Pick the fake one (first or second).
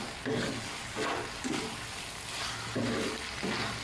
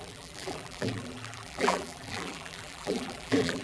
second